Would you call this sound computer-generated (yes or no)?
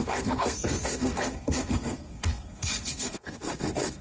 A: yes